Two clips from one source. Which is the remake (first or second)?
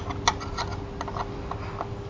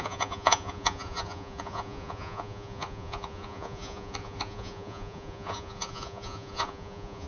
second